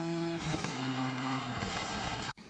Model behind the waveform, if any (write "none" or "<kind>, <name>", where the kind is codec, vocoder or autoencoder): codec, SNAC